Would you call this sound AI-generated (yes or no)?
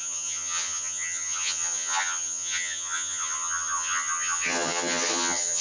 yes